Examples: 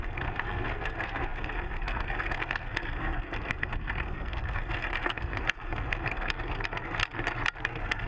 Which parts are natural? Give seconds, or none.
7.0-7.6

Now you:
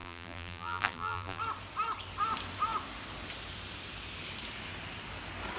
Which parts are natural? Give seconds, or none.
1.4-5.6

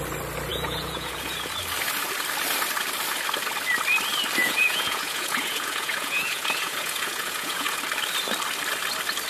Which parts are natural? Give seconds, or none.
0.0-0.5; 1.5-4.4; 7.8-9.3